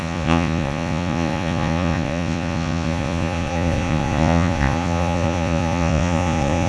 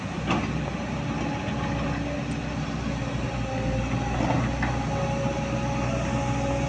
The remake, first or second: first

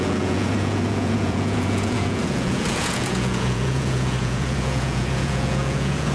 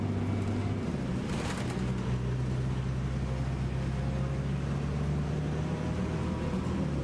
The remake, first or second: first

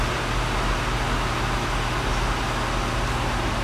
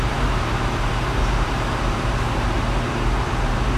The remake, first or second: second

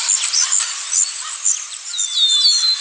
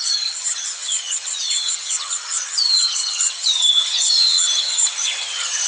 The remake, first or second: second